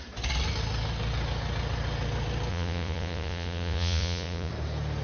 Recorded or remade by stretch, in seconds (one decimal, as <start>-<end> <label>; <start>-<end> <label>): 0.0-2.5 recorded; 2.5-4.5 remade; 4.5-5.0 recorded